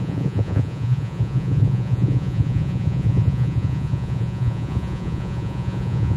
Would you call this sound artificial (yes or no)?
yes